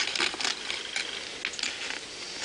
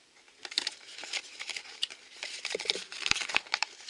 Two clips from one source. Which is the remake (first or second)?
second